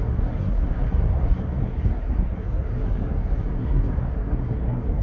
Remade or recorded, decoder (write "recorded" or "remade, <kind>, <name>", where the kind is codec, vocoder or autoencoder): remade, codec, SNAC